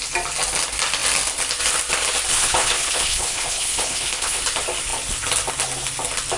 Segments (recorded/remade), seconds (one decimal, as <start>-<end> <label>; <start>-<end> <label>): 0.0-2.3 recorded; 2.3-4.4 remade; 4.4-6.4 recorded